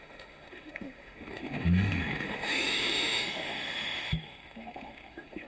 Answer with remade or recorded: remade